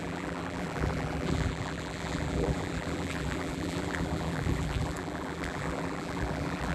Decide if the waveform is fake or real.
fake